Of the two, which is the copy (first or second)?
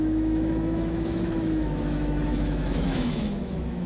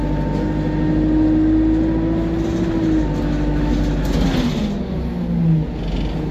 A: first